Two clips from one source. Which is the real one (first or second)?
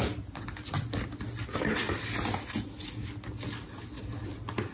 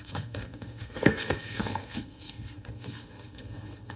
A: first